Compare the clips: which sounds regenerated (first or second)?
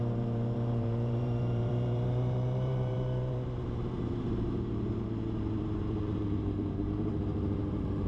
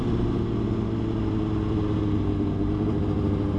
first